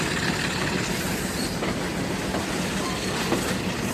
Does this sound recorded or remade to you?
recorded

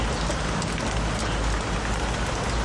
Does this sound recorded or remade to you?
recorded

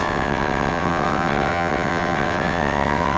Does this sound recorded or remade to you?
remade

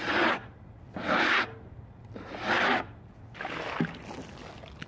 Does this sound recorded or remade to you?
recorded